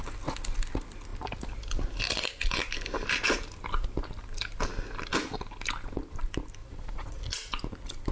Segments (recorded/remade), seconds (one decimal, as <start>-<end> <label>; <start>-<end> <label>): 0.0-6.6 recorded; 6.6-7.2 remade; 7.2-8.1 recorded

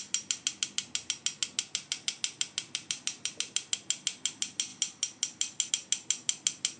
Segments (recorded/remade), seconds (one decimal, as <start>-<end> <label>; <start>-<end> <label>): 0.0-6.8 recorded